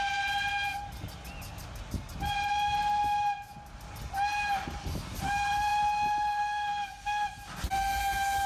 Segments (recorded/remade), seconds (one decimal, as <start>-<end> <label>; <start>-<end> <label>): 0.0-8.5 recorded